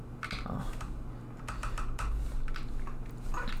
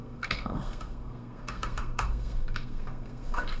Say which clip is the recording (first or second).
first